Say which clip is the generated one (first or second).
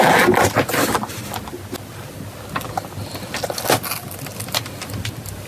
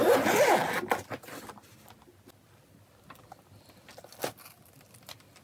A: second